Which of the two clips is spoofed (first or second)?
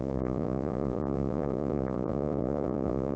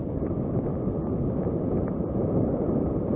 first